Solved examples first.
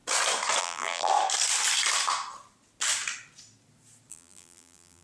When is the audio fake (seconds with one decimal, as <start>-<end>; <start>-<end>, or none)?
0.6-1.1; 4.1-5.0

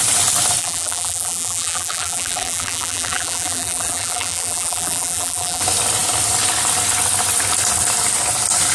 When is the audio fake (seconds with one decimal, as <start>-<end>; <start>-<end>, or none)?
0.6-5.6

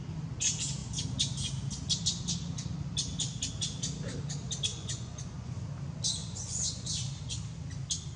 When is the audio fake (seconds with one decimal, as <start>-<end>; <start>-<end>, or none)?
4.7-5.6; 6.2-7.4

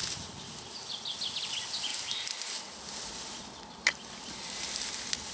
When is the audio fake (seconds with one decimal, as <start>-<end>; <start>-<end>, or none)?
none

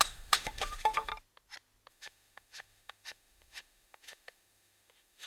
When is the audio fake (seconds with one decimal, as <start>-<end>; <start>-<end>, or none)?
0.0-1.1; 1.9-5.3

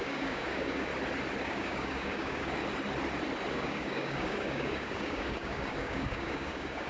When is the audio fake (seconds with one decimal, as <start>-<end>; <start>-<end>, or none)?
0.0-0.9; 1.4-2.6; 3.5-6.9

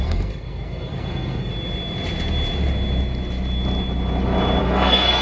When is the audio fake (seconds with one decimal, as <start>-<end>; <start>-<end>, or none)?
0.0-1.5; 4.6-5.2